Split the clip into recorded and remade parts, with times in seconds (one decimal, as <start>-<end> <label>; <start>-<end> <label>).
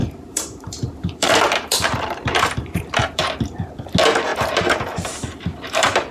0.0-3.2 remade; 3.2-4.3 recorded; 4.3-5.4 remade; 5.4-6.1 recorded